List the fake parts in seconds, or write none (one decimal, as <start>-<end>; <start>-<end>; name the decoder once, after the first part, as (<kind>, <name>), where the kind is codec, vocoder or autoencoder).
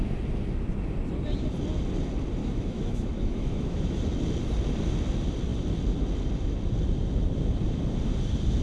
2.4-4.0 (autoencoder, DAC-VAE)